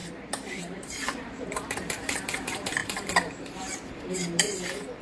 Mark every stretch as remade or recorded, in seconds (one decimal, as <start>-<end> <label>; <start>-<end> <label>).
0.0-5.0 remade